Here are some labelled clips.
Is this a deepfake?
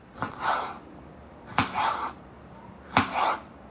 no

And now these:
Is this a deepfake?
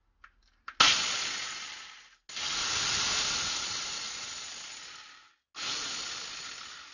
no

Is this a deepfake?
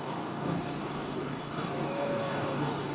yes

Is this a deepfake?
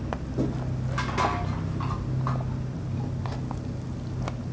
no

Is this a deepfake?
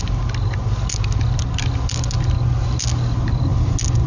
no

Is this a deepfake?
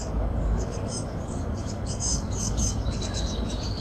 yes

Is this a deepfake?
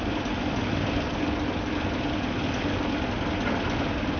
no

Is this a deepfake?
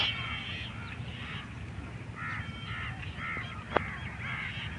no